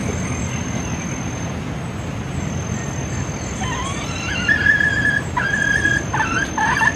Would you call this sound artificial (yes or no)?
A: yes